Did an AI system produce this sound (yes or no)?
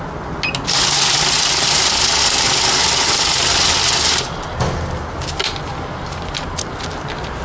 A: no